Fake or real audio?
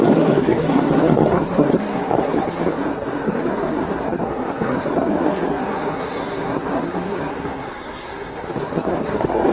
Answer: fake